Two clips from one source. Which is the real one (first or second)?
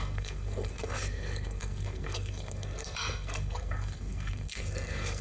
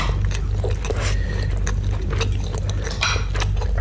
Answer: second